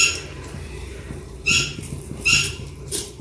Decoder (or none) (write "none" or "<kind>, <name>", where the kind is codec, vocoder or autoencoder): vocoder, BigVGAN v2